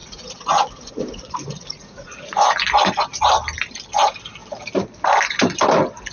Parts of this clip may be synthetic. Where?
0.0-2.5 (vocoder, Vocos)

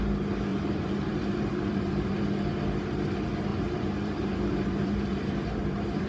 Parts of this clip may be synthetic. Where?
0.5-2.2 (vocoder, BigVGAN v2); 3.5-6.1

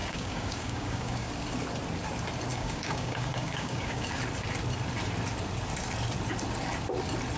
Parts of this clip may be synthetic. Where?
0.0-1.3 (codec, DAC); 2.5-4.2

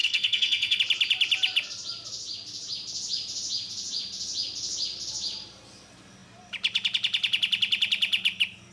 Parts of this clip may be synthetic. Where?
0.0-0.8 (codec, SNAC)

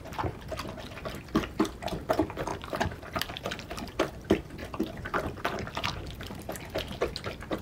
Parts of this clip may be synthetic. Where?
2.5-3.6 (vocoder, BigVGAN v2)